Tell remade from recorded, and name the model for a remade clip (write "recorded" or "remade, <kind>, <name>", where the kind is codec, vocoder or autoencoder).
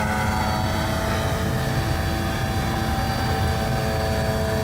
recorded